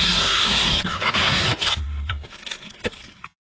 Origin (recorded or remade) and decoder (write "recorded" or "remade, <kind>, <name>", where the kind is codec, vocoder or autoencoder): remade, codec, SNAC